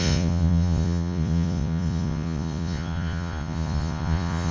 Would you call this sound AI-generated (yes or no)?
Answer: yes